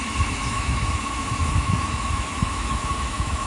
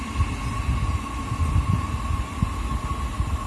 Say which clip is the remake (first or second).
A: first